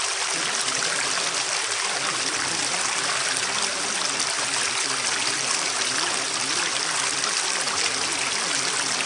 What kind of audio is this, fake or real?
real